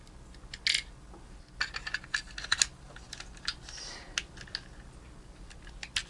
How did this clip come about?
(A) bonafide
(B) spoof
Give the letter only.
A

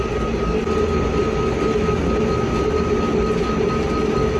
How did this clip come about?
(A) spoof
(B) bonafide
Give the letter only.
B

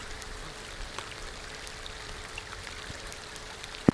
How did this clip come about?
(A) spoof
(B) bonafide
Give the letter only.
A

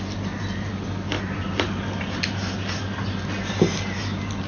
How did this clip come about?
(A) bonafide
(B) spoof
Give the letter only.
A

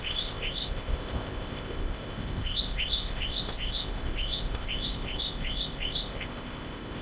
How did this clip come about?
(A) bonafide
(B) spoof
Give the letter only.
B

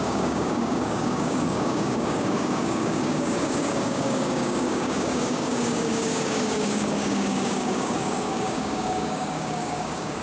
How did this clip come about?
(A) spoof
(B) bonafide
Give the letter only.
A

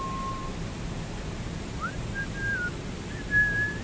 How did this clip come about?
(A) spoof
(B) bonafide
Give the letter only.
B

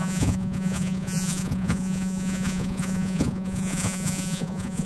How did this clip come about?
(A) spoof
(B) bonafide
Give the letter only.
A